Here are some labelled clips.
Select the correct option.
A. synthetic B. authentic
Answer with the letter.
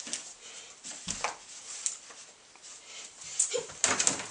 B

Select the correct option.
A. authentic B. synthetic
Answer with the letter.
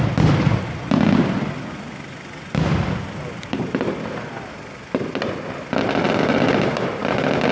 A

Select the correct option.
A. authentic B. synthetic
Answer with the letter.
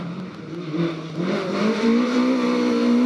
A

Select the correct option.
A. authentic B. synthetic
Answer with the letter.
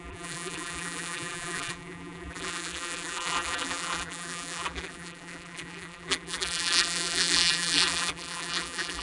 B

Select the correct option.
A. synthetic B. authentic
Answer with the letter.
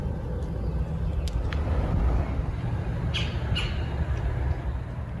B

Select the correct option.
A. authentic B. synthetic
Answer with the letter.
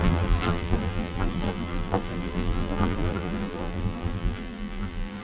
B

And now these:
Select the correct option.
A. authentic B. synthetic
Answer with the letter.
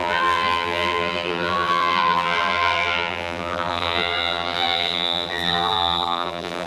B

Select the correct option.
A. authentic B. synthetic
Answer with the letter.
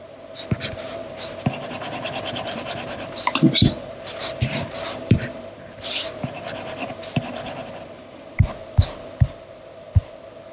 B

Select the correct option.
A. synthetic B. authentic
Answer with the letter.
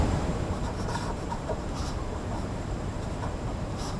A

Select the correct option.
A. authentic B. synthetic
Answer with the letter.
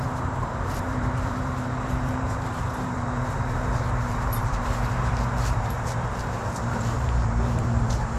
B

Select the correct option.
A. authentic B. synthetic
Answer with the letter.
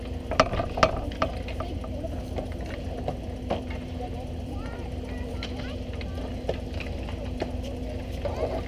A